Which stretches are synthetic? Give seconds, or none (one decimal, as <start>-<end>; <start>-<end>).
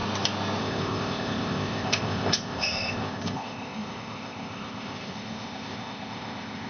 0.6-6.7